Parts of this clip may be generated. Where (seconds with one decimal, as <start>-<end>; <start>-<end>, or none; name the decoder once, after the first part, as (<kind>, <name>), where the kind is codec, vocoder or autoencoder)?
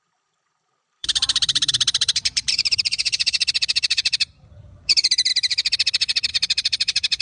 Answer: 0.0-5.3 (vocoder, BigVGAN v2); 6.3-7.2